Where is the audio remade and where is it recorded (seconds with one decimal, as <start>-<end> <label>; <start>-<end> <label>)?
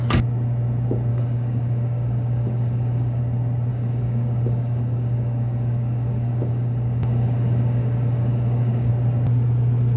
0.0-1.1 recorded; 1.1-3.2 remade; 3.2-3.7 recorded; 3.7-8.9 remade; 8.9-10.0 recorded